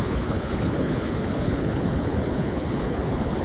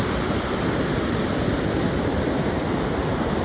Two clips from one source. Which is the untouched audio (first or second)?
second